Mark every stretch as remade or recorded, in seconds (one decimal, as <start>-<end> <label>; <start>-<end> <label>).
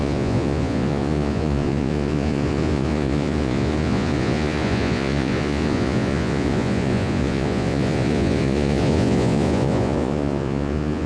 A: 0.0-11.1 remade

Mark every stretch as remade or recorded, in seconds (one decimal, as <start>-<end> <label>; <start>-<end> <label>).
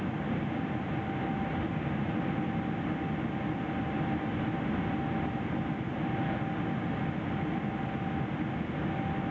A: 0.0-9.3 recorded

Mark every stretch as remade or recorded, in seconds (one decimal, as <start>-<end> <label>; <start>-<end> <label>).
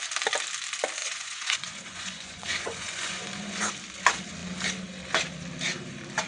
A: 0.0-1.0 recorded; 1.0-3.7 remade; 3.7-6.3 recorded